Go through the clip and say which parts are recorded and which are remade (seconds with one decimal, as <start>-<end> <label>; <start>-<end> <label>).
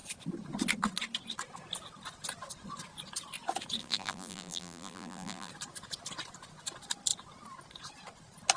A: 0.0-3.8 recorded; 3.8-5.5 remade; 5.5-8.6 recorded